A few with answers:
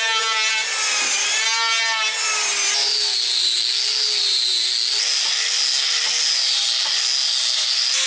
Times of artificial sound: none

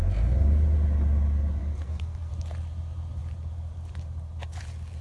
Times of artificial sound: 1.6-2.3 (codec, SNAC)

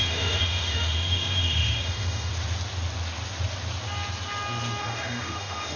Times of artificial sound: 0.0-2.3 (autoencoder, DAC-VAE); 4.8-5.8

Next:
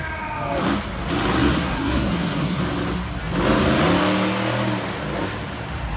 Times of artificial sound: 1.5-2.6 (codec, SNAC)